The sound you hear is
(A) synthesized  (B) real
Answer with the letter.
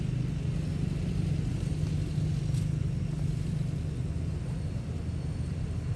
B